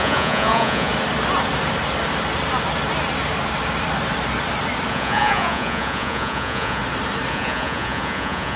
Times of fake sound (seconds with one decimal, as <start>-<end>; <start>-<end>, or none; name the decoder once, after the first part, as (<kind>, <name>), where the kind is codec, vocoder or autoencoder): 0.0-0.9 (vocoder, Vocos); 4.9-6.8; 7.3-8.6

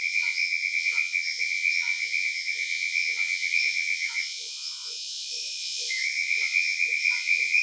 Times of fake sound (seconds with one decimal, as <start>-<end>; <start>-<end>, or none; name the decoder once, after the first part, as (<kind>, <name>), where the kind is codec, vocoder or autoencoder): 0.0-7.6 (vocoder, Vocos)

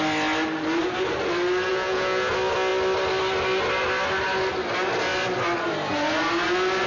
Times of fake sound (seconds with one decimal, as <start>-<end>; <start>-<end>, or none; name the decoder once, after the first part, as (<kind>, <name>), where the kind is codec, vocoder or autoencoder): 1.7-2.3 (vocoder, Vocos)

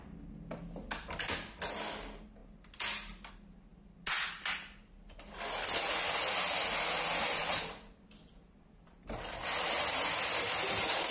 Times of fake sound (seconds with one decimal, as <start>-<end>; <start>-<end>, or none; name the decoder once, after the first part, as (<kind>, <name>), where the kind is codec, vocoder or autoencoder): none

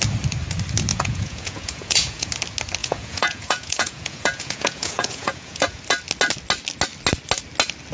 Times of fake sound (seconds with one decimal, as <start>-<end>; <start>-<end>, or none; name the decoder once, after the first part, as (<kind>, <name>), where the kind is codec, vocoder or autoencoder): 0.9-2.3 (vocoder, Vocos); 2.8-5.8

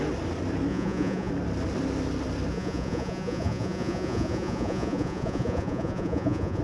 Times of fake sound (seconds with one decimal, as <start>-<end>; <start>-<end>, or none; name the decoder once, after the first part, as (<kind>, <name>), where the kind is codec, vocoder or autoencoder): 0.7-1.3 (vocoder, Vocos); 2.5-6.6

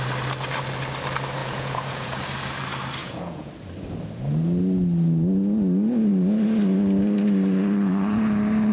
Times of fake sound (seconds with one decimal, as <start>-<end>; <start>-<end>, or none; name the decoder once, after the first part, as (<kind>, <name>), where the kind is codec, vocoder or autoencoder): 1.4-2.2 (vocoder, Vocos); 3.0-3.5